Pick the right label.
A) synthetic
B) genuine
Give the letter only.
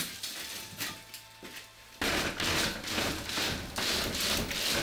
B